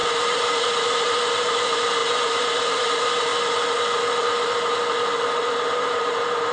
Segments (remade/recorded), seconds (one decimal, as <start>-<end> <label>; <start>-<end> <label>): 0.0-3.3 remade; 3.3-5.5 recorded; 5.5-6.5 remade